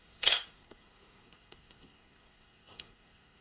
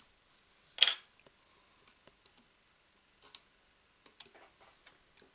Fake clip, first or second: first